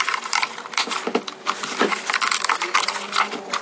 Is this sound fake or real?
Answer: real